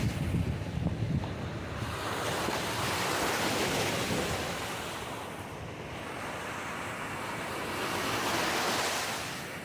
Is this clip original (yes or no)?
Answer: no